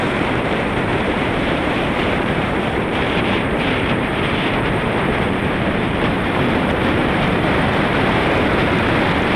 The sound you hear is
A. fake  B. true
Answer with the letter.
A